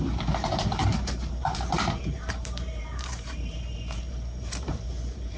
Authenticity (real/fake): fake